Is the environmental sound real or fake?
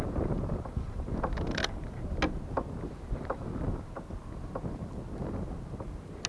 real